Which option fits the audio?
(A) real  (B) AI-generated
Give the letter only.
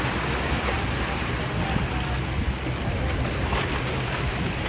A